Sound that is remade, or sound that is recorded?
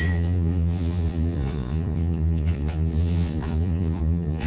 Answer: remade